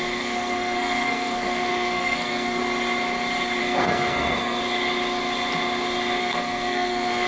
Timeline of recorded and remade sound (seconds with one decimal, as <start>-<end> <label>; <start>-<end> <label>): 0.0-2.6 remade; 2.6-3.6 recorded; 3.6-4.6 remade; 4.6-6.2 recorded; 6.2-7.3 remade

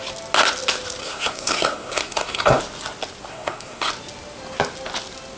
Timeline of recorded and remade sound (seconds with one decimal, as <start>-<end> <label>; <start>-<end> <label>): 0.0-1.0 recorded; 1.0-2.6 remade; 2.6-3.3 recorded; 3.3-3.9 remade; 3.9-5.4 recorded

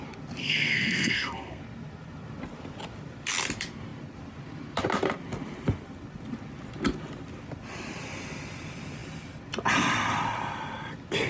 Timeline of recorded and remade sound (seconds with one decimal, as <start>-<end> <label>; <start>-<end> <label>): 0.0-0.4 recorded; 0.4-1.6 remade; 1.6-11.3 recorded

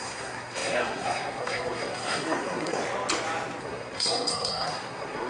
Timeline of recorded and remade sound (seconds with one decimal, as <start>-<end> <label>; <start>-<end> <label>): 0.0-2.8 remade; 2.8-3.6 recorded; 3.6-5.3 remade